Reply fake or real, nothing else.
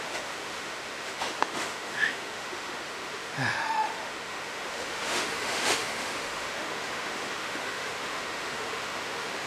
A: fake